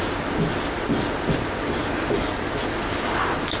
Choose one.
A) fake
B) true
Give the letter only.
B